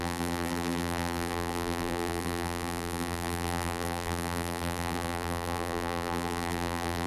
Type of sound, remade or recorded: remade